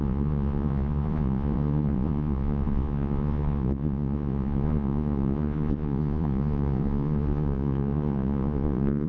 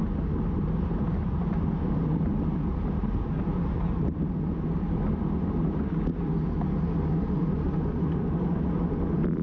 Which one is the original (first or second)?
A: second